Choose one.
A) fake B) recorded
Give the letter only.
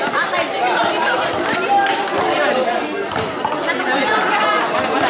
B